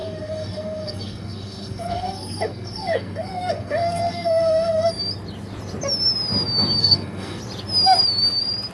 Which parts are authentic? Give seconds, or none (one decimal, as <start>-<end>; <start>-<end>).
4.9-6.8; 7.4-8.7